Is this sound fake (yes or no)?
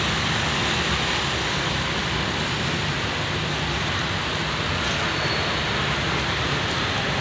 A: no